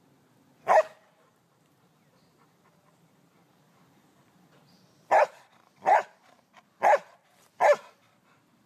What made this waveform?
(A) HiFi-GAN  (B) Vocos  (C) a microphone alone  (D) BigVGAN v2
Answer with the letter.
D